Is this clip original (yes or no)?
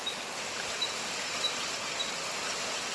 yes